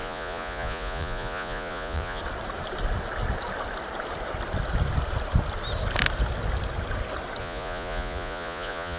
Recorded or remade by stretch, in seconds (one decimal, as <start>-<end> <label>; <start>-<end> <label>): 0.0-2.2 remade; 2.2-7.4 recorded; 7.4-9.0 remade